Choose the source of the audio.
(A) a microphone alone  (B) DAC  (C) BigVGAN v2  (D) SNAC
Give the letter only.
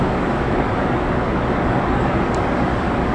B